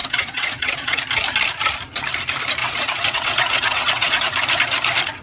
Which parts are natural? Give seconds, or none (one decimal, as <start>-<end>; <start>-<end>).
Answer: 1.0-2.6; 4.2-5.2